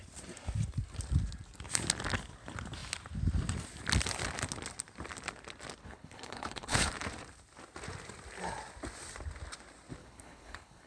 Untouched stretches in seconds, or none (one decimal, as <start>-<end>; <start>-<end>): 0.0-5.8; 6.9-10.0